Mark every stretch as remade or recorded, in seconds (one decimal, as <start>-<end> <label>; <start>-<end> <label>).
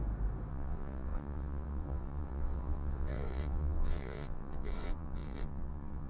0.0-0.5 recorded; 0.5-6.1 remade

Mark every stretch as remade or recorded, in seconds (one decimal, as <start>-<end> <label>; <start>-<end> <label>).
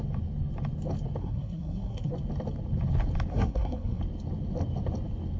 0.0-1.2 recorded; 1.2-2.1 remade; 2.1-3.3 recorded; 3.3-4.0 remade; 4.0-5.4 recorded